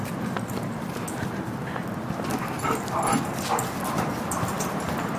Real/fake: real